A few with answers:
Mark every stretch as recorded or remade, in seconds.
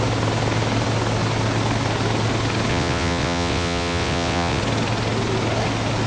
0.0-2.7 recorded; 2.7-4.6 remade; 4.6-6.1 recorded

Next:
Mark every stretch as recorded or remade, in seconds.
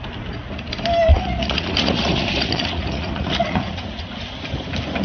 0.0-1.1 recorded; 1.1-4.1 remade; 4.1-5.0 recorded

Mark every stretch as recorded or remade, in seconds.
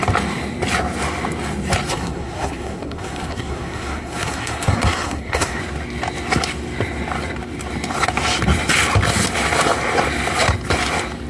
0.0-1.9 recorded; 1.9-5.6 remade; 5.6-11.3 recorded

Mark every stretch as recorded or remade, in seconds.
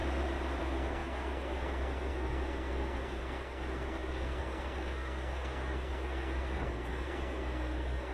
0.0-0.6 recorded; 0.6-8.1 remade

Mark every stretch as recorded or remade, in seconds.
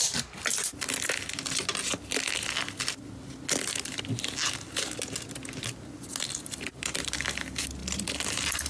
0.0-8.7 recorded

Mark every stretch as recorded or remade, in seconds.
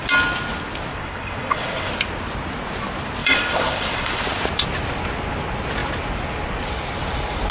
0.0-0.9 recorded; 0.9-1.9 remade; 1.9-3.2 recorded; 3.2-4.2 remade; 4.2-7.5 recorded